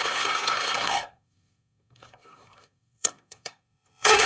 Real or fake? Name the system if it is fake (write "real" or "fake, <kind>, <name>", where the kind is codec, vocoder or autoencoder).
fake, codec, SNAC